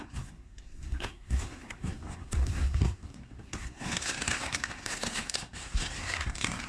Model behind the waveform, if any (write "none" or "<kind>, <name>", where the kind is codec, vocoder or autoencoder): codec, SNAC